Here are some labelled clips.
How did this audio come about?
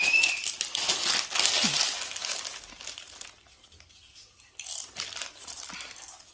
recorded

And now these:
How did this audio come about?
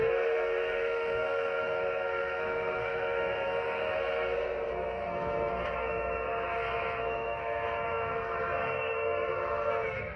remade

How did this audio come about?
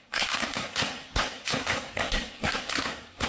remade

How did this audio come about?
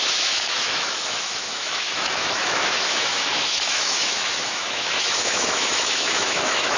remade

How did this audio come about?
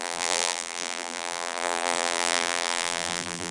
remade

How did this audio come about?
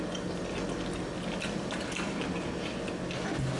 recorded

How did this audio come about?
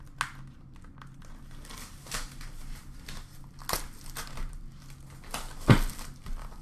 recorded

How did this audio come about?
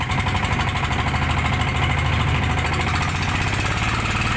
recorded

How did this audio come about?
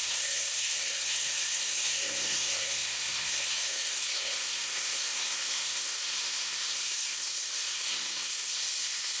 remade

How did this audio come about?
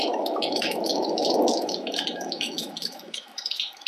remade